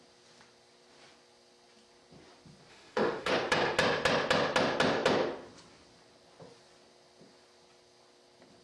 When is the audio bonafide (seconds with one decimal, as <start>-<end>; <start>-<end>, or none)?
0.0-2.7; 3.3-8.6